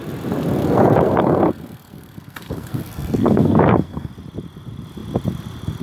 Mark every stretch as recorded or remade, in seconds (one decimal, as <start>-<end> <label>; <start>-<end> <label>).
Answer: 0.0-0.6 recorded; 0.6-4.1 remade; 4.1-5.8 recorded